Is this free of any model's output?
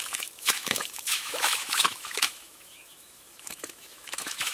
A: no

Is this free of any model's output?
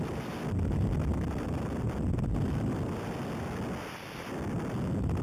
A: yes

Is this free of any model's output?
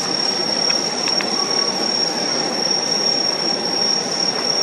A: yes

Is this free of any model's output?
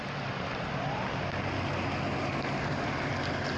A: yes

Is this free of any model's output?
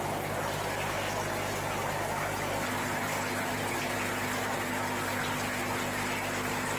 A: yes